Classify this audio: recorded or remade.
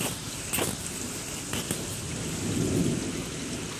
recorded